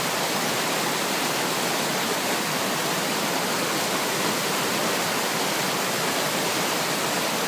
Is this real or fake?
real